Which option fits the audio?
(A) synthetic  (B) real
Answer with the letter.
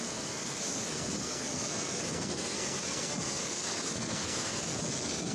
A